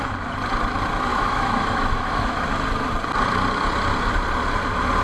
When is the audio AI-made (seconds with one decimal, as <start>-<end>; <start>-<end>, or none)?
1.1-2.4